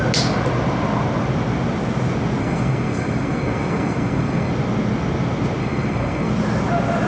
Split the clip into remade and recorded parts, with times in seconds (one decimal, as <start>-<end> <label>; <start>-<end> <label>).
0.0-2.4 recorded; 2.4-4.5 remade; 4.5-5.6 recorded; 5.6-6.3 remade; 6.3-7.1 recorded